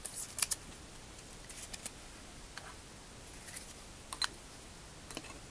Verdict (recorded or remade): recorded